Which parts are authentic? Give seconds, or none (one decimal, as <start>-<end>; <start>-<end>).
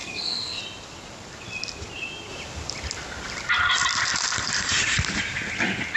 0.6-6.0